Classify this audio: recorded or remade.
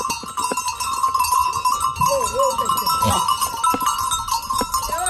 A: recorded